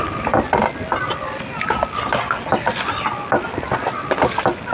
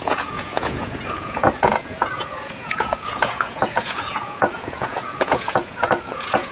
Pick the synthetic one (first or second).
second